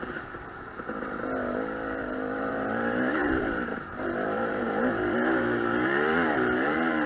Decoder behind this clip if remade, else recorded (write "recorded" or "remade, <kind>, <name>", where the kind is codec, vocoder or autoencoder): remade, vocoder, BigVGAN v2